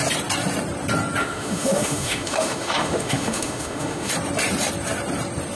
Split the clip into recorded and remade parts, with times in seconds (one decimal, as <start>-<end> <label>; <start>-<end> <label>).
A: 0.0-1.2 recorded; 1.2-4.1 remade; 4.1-5.6 recorded